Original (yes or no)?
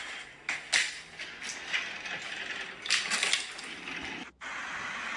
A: yes